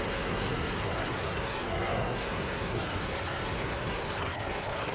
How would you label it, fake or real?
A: fake